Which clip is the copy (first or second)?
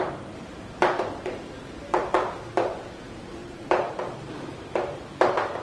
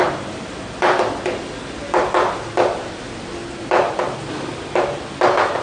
first